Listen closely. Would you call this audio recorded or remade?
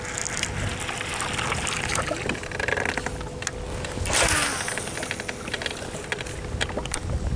recorded